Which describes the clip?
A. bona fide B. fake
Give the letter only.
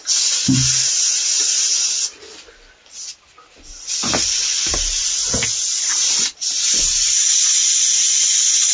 A